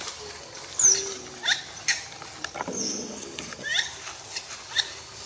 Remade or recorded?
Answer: recorded